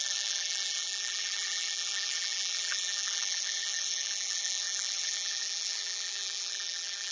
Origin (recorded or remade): remade